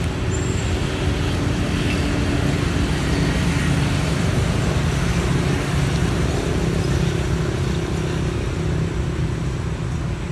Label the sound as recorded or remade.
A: recorded